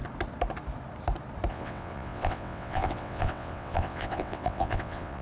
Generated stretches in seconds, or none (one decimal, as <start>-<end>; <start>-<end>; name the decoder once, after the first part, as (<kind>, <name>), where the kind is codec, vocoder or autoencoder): 1.5-5.2 (vocoder, WaveNeXt)